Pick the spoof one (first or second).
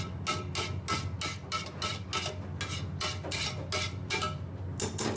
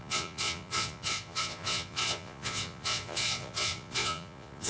second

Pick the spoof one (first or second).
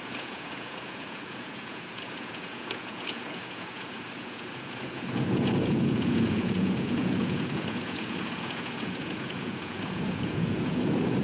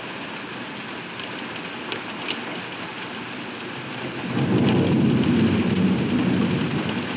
first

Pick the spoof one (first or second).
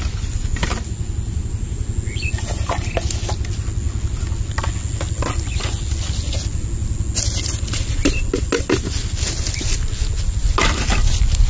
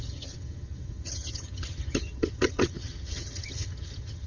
second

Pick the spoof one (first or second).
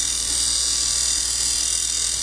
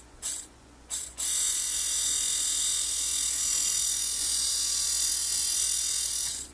second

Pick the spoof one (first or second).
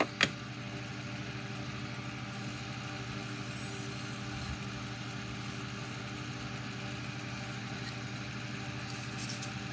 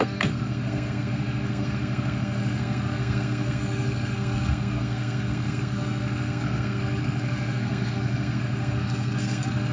second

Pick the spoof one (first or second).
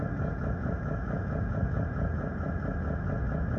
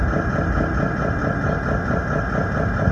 first